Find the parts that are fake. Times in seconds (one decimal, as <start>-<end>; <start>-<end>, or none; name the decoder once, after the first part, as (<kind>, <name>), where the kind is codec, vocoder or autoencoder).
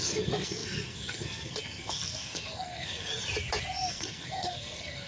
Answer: 0.0-3.1 (codec, SNAC); 3.9-5.1